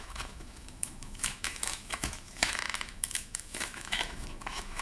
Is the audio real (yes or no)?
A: no